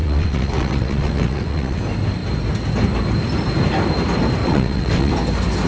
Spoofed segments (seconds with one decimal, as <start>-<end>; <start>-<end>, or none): 0.0-1.8; 4.4-5.1

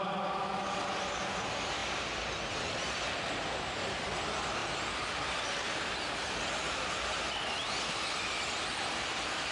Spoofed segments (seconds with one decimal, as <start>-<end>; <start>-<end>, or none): 1.8-4.1

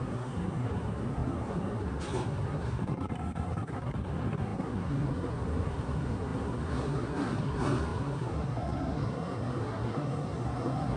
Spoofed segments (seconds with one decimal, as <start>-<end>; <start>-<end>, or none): 0.0-11.0

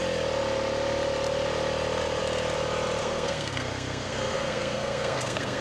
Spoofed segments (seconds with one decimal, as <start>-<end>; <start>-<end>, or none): 3.0-5.6